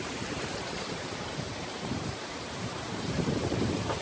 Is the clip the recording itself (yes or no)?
no